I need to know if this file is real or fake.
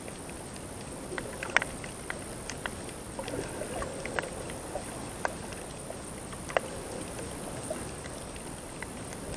real